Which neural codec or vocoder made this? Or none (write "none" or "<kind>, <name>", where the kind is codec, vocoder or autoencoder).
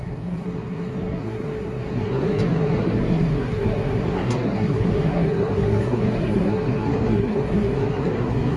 codec, SNAC